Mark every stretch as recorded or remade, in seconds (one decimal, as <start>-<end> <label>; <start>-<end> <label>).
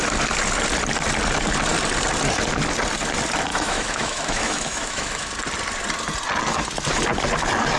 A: 0.0-3.5 recorded; 3.5-5.3 remade; 5.3-7.8 recorded